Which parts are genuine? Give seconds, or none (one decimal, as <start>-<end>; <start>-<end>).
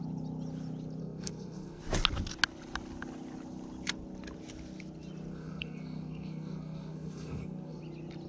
0.0-1.0; 1.8-5.3; 7.8-8.3